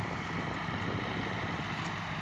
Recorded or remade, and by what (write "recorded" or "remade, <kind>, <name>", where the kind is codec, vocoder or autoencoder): remade, vocoder, BigVGAN v2